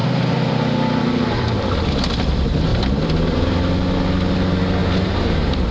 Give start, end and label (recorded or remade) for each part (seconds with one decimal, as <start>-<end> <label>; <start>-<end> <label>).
0.0-1.9 remade; 1.9-2.7 recorded; 2.7-3.6 remade; 3.6-4.8 recorded; 4.8-5.7 remade